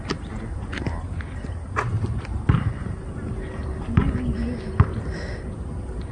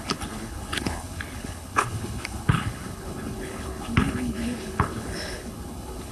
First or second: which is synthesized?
second